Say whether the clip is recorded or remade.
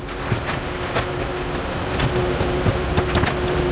recorded